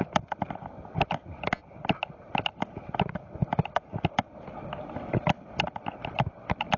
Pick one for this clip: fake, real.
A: real